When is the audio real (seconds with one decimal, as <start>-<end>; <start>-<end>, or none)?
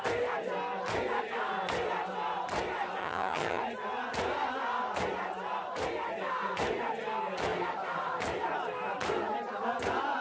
0.0-3.0; 3.6-10.2